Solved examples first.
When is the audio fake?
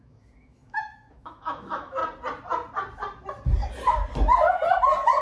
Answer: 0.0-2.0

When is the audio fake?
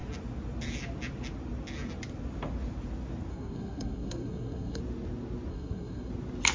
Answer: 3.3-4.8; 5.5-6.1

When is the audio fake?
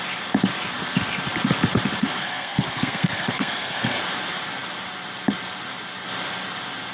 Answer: 2.2-4.0